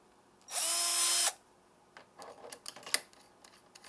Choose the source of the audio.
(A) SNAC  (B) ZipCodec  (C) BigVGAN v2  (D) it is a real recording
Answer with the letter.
D